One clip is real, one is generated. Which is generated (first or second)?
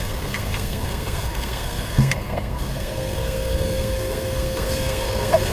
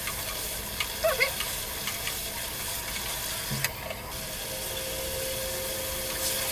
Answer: first